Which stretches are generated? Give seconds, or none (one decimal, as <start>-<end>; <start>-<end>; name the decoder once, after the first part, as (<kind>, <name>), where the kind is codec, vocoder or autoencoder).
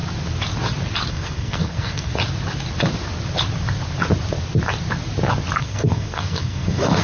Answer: 1.1-2.1 (codec, SNAC); 5.6-7.0